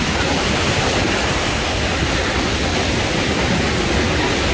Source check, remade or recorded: recorded